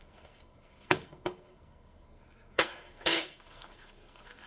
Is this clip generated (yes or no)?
yes